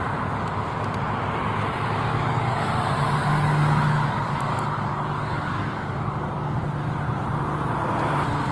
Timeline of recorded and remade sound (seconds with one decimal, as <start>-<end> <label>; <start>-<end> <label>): 0.0-2.1 recorded; 2.1-2.7 remade; 2.7-3.2 recorded; 3.2-6.6 remade; 6.6-8.5 recorded